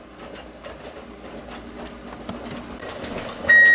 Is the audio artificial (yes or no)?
no